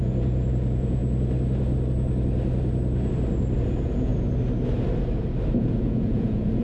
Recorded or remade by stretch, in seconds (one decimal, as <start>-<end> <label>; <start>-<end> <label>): 0.0-1.0 remade; 1.0-3.6 recorded; 3.6-4.1 remade; 4.1-5.5 recorded; 5.5-6.6 remade